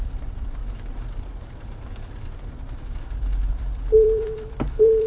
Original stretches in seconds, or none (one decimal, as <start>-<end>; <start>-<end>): 0.6-2.6